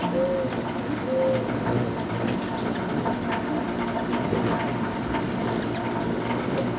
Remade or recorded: recorded